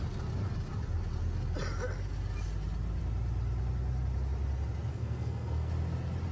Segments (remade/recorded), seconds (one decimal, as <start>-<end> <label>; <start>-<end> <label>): 0.0-4.9 recorded; 4.9-5.7 remade; 5.7-6.3 recorded